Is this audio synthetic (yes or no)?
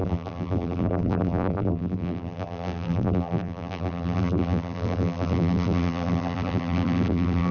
yes